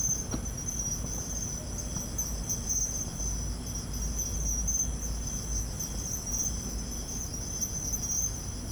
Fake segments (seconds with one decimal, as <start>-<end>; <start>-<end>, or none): none